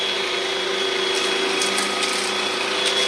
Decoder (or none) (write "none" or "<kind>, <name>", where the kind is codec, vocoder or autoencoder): none